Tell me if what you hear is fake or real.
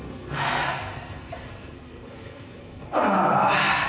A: fake